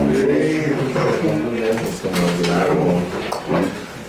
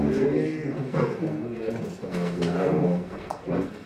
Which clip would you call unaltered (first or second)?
first